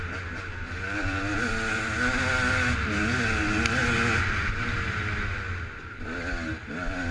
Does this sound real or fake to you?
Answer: real